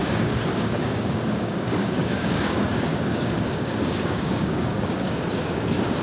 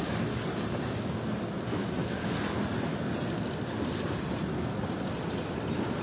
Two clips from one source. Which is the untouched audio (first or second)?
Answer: second